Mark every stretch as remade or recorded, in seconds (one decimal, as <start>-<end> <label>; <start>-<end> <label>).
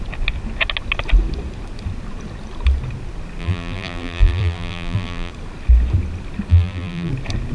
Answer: 0.0-3.4 recorded; 3.4-5.3 remade; 5.3-6.5 recorded; 6.5-7.1 remade; 7.1-7.5 recorded